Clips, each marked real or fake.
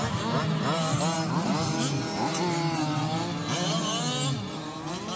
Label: real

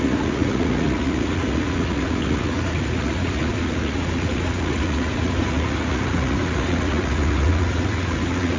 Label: fake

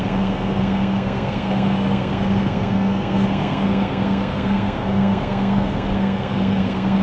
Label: fake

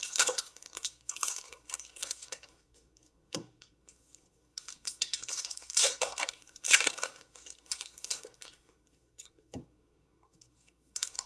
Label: fake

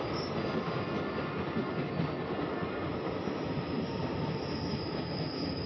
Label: real